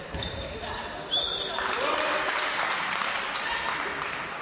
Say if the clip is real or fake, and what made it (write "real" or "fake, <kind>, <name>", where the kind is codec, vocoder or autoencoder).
fake, vocoder, BigVGAN v2